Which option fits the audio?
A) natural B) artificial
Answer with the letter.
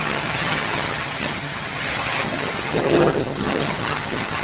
B